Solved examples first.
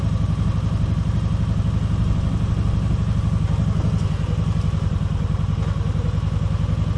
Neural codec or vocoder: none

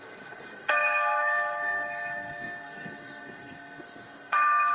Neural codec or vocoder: codec, SNAC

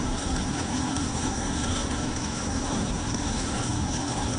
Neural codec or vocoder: codec, SNAC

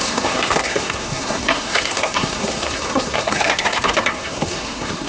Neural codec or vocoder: codec, SNAC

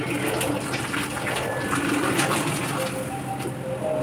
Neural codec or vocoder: none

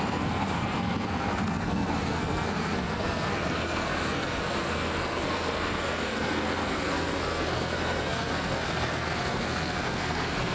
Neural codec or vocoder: codec, SNAC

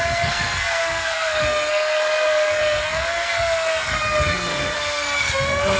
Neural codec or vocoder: codec, SNAC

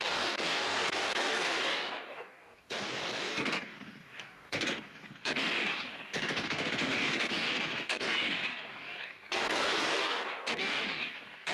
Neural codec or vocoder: codec, DAC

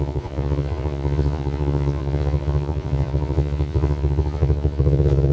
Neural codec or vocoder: vocoder, Vocos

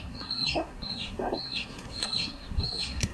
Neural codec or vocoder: codec, SNAC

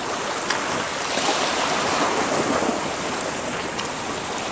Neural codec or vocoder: none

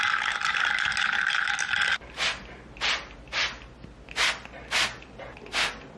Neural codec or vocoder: none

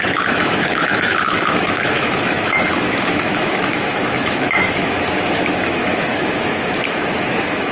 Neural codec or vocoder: autoencoder, DAC-VAE